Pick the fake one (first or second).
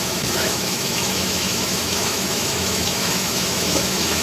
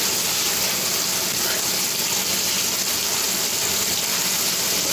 first